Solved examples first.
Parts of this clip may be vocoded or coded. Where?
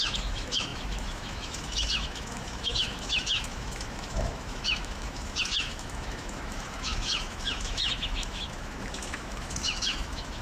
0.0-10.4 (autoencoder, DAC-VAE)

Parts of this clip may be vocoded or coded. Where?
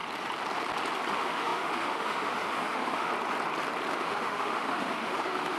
1.1-3.1 (autoencoder, DAC-VAE); 3.9-5.6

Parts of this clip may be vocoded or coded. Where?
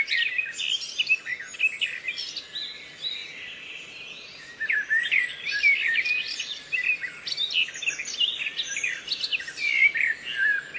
none